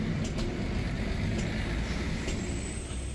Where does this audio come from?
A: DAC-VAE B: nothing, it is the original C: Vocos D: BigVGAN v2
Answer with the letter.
B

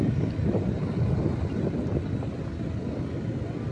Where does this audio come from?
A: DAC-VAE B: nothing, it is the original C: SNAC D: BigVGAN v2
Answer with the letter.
B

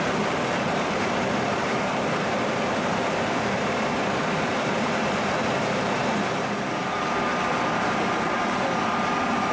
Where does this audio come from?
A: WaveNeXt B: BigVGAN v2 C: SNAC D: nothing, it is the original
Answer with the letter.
B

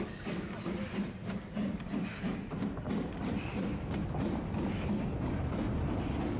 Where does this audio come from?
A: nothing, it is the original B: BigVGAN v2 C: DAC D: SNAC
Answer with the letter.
A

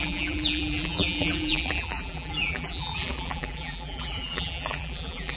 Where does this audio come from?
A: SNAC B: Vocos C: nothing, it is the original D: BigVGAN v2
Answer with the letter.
D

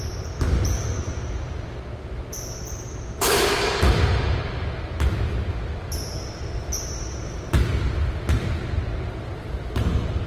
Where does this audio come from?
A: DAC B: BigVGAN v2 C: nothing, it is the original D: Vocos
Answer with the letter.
C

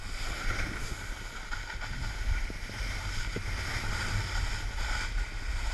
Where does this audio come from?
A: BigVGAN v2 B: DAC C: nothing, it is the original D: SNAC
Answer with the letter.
C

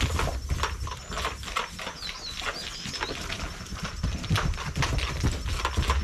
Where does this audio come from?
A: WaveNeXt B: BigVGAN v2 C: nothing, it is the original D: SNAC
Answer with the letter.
C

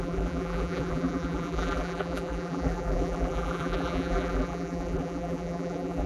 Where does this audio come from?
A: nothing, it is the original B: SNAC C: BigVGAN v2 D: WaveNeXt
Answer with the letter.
C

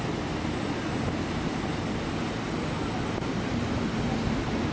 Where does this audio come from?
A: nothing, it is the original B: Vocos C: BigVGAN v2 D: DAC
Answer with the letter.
A